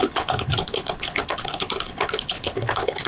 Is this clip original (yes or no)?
no